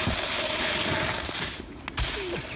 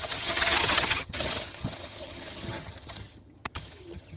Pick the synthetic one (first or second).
second